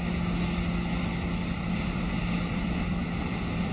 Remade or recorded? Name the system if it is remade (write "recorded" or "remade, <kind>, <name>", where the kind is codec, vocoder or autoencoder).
recorded